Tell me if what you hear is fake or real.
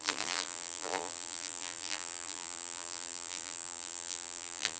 fake